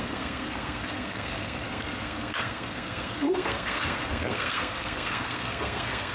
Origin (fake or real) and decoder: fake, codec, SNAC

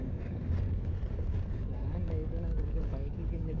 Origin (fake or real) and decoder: fake, codec, DAC